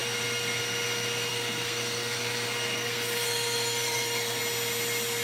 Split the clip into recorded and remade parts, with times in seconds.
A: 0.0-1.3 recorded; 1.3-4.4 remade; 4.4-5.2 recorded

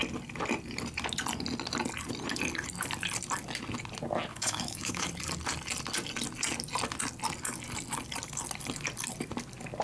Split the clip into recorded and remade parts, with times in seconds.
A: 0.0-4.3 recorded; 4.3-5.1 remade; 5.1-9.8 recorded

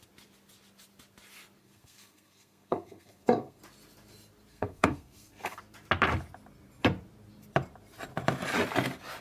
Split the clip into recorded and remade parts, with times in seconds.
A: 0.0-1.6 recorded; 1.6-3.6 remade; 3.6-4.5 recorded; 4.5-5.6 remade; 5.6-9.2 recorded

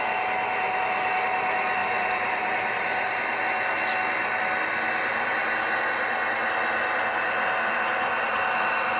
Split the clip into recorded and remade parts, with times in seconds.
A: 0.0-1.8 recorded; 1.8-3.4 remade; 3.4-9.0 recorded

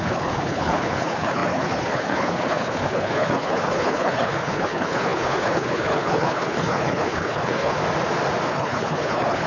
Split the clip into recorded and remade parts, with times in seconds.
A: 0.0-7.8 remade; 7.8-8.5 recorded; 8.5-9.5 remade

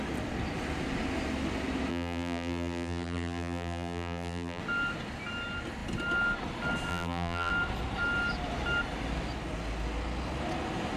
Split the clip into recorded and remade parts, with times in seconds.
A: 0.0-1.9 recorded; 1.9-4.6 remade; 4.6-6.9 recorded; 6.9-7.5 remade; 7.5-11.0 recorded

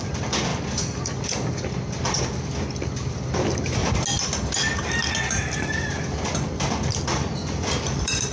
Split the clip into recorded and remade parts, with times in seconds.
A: 0.0-0.5 remade; 0.5-1.5 recorded; 1.5-3.8 remade; 3.8-5.2 recorded; 5.2-8.3 remade